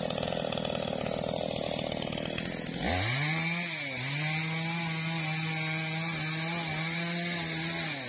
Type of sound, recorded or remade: recorded